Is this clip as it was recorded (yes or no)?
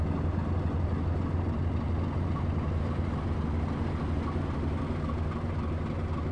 yes